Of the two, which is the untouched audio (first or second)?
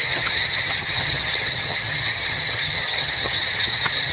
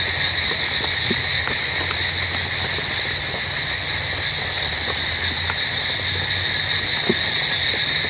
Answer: second